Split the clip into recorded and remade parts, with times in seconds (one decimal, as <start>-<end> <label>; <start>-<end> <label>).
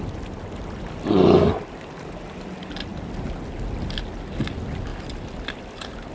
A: 0.0-6.1 recorded